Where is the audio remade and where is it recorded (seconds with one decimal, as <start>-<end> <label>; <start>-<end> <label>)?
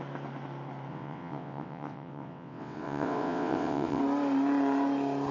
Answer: 0.0-0.9 recorded; 0.9-4.0 remade; 4.0-5.3 recorded